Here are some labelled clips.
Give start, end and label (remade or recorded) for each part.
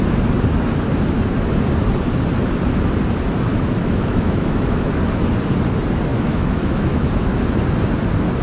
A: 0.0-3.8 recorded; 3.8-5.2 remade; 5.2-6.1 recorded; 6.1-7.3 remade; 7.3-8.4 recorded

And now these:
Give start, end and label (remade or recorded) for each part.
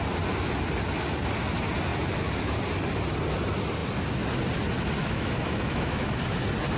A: 0.0-5.0 recorded; 5.0-6.2 remade; 6.2-6.8 recorded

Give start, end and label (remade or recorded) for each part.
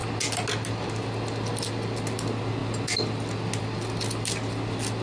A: 0.0-5.0 recorded